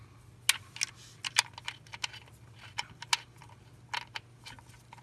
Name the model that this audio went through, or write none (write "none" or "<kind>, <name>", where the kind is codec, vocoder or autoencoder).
none